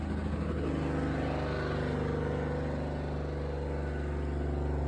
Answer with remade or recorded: recorded